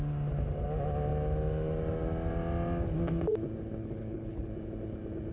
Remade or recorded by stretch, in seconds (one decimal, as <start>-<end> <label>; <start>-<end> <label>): 0.0-3.8 recorded; 3.8-4.5 remade; 4.5-5.3 recorded